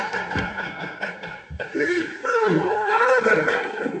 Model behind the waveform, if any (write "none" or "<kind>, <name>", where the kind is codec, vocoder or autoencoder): codec, SNAC